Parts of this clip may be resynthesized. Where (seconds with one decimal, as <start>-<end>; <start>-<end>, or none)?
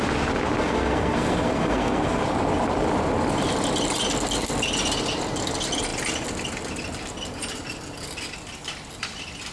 0.6-2.2